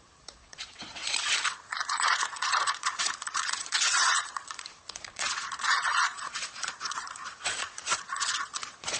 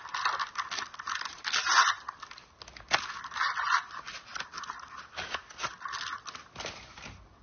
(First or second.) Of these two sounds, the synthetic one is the first